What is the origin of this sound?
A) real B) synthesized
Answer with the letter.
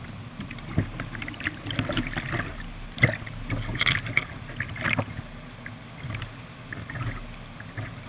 A